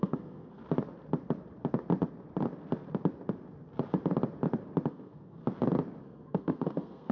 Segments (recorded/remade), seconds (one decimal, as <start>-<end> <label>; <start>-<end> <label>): 0.0-0.6 remade; 0.6-4.9 recorded; 4.9-5.4 remade; 5.4-6.0 recorded; 6.0-7.1 remade